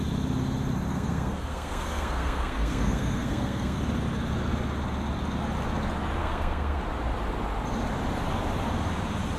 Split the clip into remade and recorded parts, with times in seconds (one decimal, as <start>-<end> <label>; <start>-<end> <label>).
0.0-0.9 recorded; 0.9-3.8 remade; 3.8-6.2 recorded; 6.2-6.8 remade; 6.8-9.4 recorded